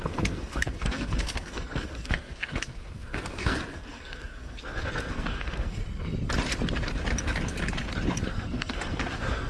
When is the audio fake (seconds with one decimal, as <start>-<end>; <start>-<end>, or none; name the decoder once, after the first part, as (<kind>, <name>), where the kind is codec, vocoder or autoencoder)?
0.0-5.8 (codec, SNAC); 8.3-9.5

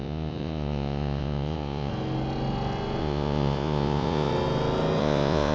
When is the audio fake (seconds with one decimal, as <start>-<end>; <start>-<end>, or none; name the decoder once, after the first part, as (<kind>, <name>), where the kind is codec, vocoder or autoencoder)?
0.0-1.9 (vocoder, Vocos); 3.0-4.3; 5.0-5.5

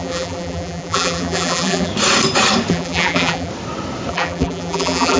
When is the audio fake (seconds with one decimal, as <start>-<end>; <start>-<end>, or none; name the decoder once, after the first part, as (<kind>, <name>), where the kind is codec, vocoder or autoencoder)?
0.0-1.9 (vocoder, BigVGAN v2); 2.7-3.5; 4.1-5.2

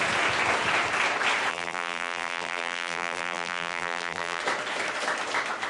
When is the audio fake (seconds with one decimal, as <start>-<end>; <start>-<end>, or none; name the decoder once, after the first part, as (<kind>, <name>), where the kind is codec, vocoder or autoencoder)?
1.5-4.4 (vocoder, BigVGAN v2)

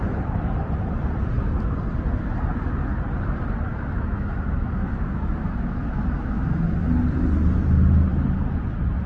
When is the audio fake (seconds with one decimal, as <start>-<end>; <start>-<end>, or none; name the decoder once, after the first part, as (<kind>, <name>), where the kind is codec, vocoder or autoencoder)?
3.7-6.9 (autoencoder, DAC-VAE)

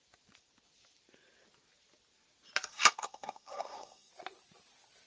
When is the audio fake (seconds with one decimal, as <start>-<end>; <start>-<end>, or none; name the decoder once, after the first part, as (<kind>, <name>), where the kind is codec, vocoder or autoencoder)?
2.7-4.1 (codec, SNAC)

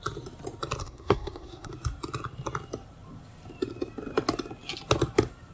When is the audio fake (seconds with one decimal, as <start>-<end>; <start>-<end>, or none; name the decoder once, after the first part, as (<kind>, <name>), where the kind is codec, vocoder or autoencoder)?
0.8-1.7 (codec, SNAC)